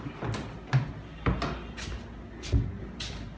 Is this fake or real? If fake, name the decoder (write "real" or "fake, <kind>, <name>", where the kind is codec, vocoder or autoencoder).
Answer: real